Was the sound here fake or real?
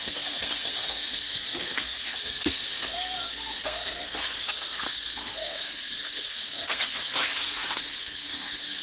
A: fake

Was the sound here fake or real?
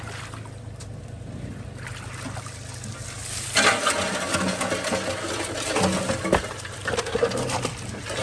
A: real